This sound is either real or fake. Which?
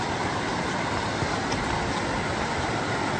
real